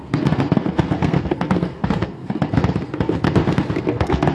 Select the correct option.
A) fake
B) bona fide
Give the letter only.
A